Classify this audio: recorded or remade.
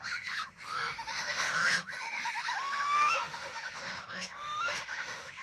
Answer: remade